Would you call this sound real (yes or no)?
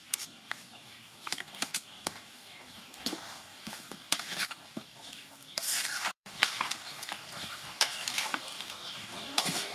no